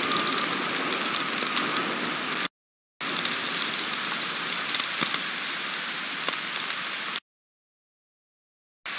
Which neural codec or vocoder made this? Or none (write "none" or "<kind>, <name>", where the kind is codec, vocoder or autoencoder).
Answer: none